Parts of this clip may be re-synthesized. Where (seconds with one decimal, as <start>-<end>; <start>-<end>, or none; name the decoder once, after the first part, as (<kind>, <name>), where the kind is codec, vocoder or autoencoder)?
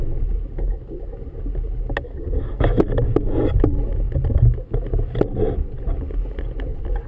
none